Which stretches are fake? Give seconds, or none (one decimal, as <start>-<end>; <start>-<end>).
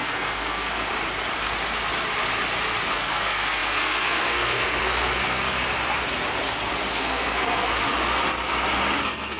0.0-0.9; 2.9-5.6; 6.9-7.7; 9.0-9.4